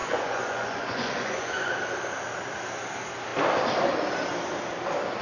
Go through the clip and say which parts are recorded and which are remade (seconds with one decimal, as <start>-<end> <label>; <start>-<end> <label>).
0.0-1.7 remade; 1.7-5.2 recorded